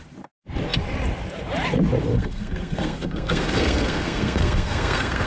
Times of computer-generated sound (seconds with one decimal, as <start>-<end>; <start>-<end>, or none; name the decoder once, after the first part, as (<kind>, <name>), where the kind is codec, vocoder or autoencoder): 2.1-5.3 (codec, SNAC)